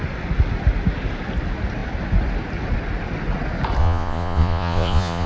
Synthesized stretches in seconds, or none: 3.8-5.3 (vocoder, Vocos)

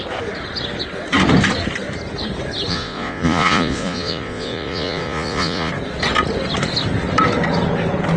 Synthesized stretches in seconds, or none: 2.7-5.7 (vocoder, Vocos)

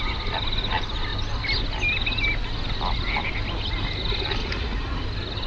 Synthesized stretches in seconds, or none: 4.4-5.0 (vocoder, Vocos)

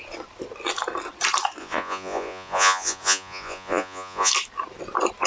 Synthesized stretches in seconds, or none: 1.6-4.3 (vocoder, Vocos)